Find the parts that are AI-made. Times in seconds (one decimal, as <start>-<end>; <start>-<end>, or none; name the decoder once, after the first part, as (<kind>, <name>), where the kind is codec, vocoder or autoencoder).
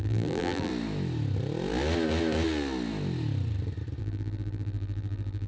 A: 0.0-0.7 (vocoder, BigVGAN v2); 4.0-5.5